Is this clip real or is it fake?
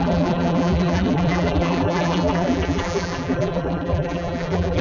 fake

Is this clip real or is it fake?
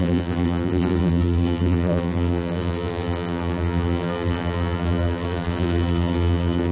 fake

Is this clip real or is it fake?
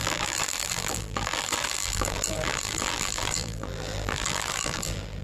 fake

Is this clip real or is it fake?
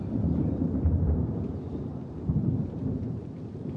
fake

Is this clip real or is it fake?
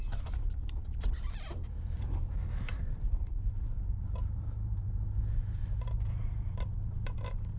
fake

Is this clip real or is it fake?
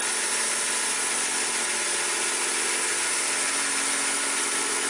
real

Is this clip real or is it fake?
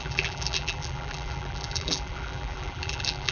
fake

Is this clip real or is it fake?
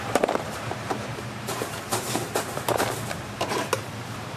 fake